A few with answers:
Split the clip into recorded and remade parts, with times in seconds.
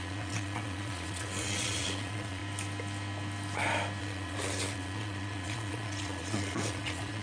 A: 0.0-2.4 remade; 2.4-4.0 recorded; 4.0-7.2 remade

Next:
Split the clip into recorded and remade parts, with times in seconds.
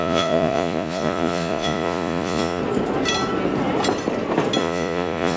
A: 0.0-2.6 remade; 2.6-4.6 recorded; 4.6-5.4 remade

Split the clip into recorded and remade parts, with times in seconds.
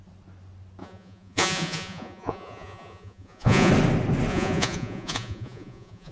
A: 0.0-0.8 recorded; 0.8-3.7 remade; 3.7-4.3 recorded; 4.3-6.1 remade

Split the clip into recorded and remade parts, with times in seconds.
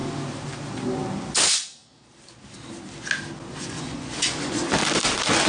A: 0.0-3.5 recorded; 3.5-4.6 remade; 4.6-5.5 recorded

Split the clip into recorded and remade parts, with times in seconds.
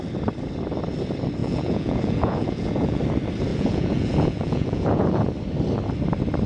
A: 0.0-1.4 recorded; 1.4-3.0 remade; 3.0-3.5 recorded; 3.5-5.3 remade; 5.3-6.5 recorded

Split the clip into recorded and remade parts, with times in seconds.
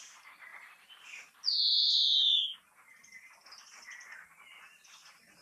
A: 0.0-5.4 recorded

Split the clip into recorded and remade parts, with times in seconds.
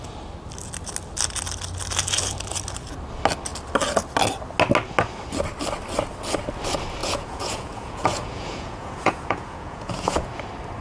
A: 0.0-7.0 recorded; 7.0-10.4 remade; 10.4-10.8 recorded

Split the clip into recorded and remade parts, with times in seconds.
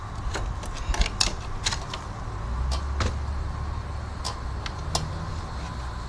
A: 0.0-6.1 recorded